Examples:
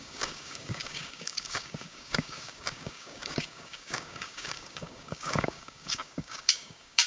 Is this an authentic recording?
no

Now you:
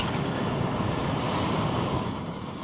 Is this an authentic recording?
no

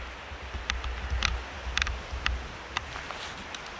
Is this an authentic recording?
yes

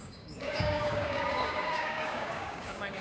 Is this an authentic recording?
no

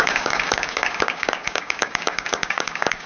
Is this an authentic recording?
no